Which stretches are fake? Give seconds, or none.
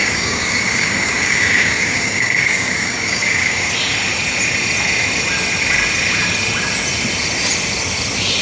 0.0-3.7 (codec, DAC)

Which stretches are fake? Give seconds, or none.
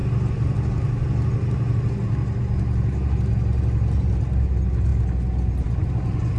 none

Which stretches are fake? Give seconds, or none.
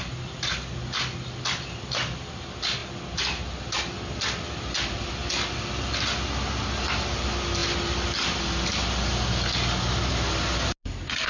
none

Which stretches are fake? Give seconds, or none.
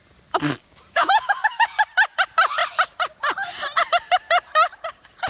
0.6-1.8 (codec, DAC)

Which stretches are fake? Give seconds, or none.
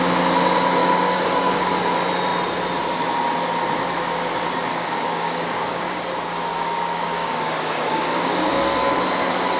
0.8-1.7 (codec, DAC); 4.7-6.0; 6.5-9.0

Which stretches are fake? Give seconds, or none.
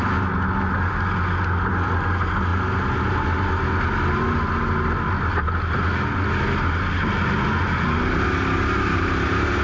none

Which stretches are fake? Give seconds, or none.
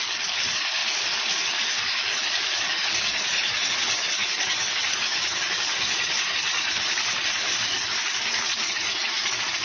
0.0-9.6 (codec, DAC)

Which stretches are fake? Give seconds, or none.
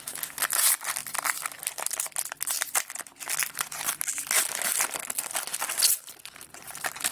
none